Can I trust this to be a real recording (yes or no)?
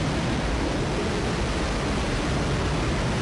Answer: yes